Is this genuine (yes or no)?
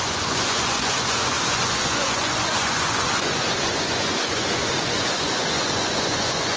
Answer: no